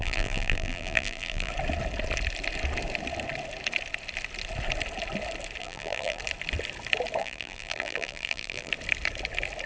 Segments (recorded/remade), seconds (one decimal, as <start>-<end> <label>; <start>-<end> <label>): 0.0-1.5 remade; 1.5-5.6 recorded; 5.6-6.2 remade; 6.2-7.2 recorded; 7.2-8.7 remade; 8.7-9.7 recorded